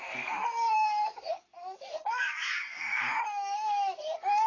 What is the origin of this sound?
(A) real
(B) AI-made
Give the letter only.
B